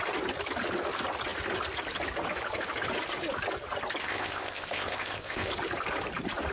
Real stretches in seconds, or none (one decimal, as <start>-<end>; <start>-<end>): 0.0-4.0; 5.5-6.5